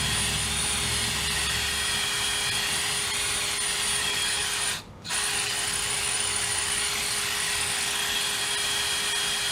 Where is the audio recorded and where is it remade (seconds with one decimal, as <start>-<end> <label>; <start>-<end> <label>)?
0.0-4.0 recorded; 4.0-8.4 remade; 8.4-9.5 recorded